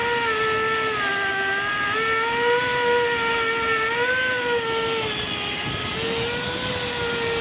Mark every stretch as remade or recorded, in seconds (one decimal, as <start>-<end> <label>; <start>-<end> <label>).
0.0-7.4 recorded